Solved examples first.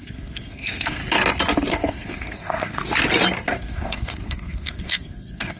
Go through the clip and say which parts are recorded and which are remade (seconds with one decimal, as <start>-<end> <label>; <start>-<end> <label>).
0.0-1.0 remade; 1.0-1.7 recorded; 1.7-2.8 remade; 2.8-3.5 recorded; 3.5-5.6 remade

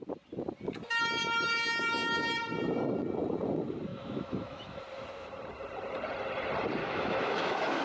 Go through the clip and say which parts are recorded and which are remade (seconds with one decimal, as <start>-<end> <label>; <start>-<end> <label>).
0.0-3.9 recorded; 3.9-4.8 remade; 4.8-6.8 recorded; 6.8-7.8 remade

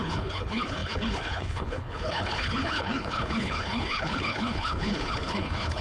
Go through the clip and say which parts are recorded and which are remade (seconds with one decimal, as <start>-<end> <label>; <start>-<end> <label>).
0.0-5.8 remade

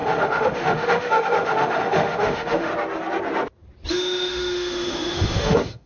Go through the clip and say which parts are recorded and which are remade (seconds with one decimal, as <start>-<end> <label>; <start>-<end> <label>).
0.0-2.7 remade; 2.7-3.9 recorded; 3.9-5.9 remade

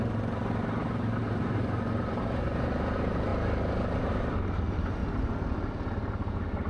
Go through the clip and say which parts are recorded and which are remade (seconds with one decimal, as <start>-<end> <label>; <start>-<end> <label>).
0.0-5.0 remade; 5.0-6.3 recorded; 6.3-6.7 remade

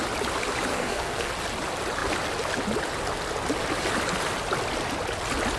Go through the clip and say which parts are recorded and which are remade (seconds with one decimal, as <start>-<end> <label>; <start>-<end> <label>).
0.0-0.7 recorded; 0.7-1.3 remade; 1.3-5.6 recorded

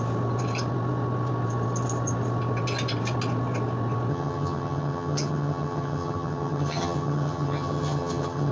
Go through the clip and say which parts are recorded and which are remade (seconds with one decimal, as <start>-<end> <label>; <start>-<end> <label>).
0.0-4.1 recorded; 4.1-8.5 remade